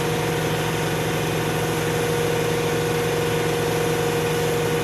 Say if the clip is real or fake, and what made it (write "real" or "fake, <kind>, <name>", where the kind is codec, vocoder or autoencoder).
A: real